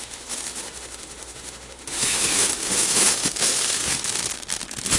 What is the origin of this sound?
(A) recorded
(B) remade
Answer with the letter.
B